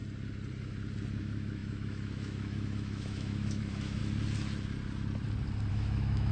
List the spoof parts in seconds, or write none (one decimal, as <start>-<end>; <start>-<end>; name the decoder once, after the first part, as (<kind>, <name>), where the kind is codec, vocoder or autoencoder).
1.2-4.0 (autoencoder, DAC-VAE); 5.7-6.3